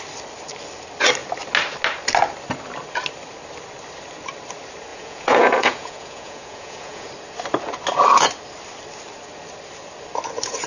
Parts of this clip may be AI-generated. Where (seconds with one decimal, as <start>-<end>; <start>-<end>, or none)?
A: 4.9-7.1